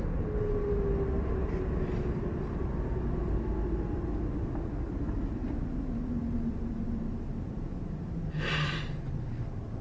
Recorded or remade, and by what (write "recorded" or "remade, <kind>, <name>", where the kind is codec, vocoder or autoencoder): recorded